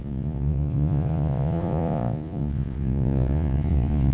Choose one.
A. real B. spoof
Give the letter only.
B